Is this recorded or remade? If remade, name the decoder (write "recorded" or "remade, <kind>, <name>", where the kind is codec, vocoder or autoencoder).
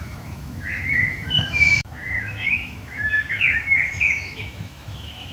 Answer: remade, autoencoder, DAC-VAE